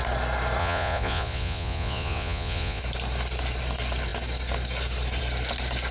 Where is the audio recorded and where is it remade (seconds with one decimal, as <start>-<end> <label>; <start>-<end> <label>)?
0.0-0.6 recorded; 0.6-2.8 remade; 2.8-5.9 recorded